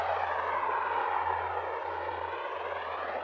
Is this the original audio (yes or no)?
yes